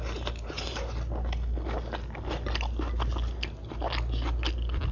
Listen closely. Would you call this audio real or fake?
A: real